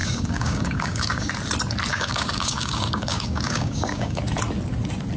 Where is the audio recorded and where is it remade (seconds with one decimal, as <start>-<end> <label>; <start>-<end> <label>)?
0.0-1.3 remade; 1.3-1.9 recorded; 1.9-4.2 remade; 4.2-5.2 recorded